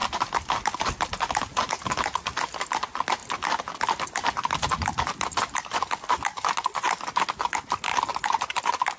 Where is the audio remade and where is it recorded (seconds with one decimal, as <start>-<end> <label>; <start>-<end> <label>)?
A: 0.0-9.0 recorded